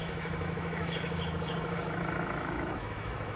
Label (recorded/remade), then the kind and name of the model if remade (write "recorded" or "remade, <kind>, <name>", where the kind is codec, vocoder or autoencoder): remade, autoencoder, DAC-VAE